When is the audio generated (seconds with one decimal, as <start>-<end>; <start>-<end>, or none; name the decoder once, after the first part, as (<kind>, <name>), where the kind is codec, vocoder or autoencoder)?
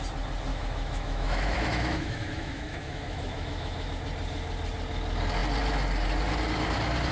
0.5-3.9 (autoencoder, DAC-VAE)